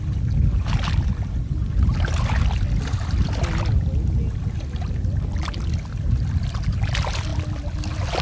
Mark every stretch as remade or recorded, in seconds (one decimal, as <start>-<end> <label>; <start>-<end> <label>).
0.0-8.2 recorded